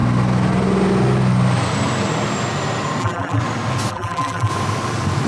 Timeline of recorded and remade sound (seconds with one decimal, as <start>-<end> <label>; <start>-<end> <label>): 0.0-3.0 recorded; 3.0-3.4 remade; 3.4-3.9 recorded; 3.9-4.5 remade; 4.5-5.3 recorded

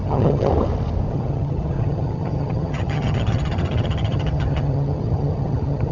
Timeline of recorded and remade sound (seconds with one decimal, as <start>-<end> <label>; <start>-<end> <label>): 0.0-0.5 remade; 0.5-1.1 recorded; 1.1-5.9 remade

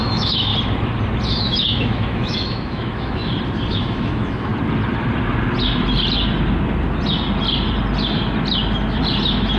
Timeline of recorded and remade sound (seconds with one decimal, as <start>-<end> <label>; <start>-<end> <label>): 0.0-0.5 remade; 0.5-1.3 recorded; 1.3-3.2 remade; 3.2-3.7 recorded; 3.7-4.5 remade; 4.5-9.6 recorded